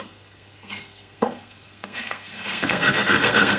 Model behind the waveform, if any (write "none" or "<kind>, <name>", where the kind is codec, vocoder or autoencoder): codec, SNAC